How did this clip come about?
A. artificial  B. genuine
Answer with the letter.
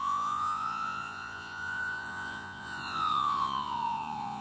A